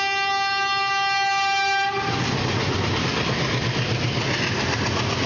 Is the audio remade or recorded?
recorded